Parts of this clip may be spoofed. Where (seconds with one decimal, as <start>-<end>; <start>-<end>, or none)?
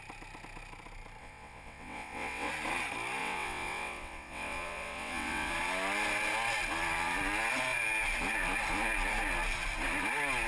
1.2-2.5; 3.2-5.5